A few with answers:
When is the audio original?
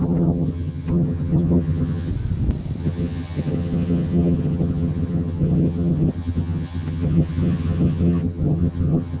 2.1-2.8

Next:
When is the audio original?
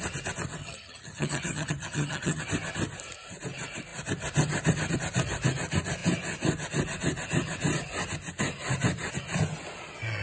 0.0-0.6; 2.4-10.2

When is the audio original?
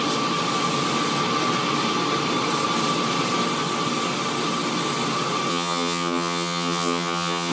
0.0-5.5